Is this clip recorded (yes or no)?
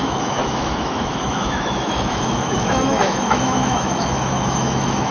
no